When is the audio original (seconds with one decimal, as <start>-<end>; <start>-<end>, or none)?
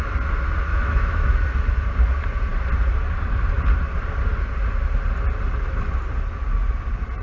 0.0-0.7; 1.3-7.2